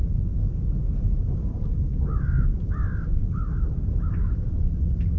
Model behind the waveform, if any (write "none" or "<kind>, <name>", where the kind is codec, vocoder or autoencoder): none